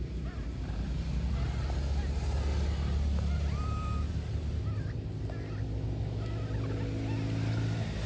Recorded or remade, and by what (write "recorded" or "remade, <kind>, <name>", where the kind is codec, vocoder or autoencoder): recorded